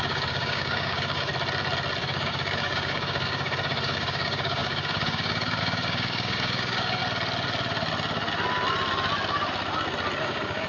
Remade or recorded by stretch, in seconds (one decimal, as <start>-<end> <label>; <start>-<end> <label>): 0.0-1.3 remade; 1.3-2.0 recorded; 2.0-7.0 remade; 7.0-10.2 recorded; 10.2-10.7 remade